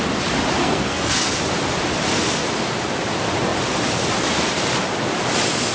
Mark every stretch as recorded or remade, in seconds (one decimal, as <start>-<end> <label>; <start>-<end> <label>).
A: 0.0-0.6 recorded; 0.6-1.4 remade; 1.4-5.7 recorded